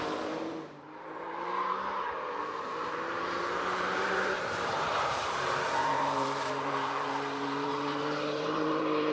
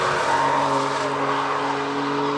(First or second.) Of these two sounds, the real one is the second